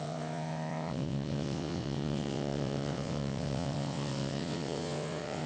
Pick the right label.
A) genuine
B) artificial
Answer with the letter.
B